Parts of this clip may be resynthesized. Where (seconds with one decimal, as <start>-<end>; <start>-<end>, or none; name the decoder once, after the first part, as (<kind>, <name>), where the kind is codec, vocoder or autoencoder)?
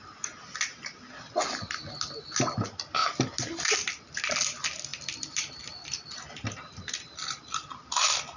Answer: none